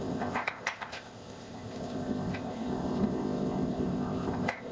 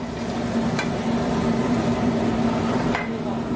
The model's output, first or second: first